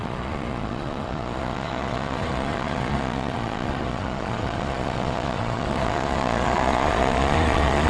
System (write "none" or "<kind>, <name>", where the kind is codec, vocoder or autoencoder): vocoder, Vocos